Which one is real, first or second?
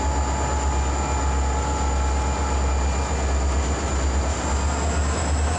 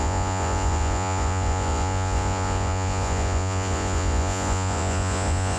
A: first